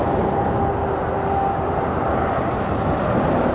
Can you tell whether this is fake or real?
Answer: real